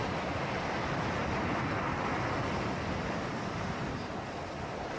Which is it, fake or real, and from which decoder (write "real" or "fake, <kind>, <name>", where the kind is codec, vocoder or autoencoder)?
real